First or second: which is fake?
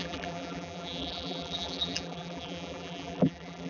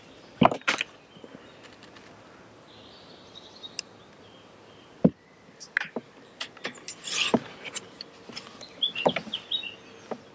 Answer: first